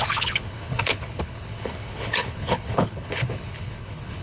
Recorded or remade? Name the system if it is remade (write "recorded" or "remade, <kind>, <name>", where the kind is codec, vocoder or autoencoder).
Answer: remade, codec, HILCodec